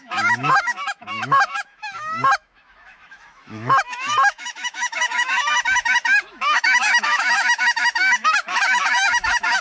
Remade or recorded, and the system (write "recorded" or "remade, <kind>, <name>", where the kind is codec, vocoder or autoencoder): remade, autoencoder, DAC-VAE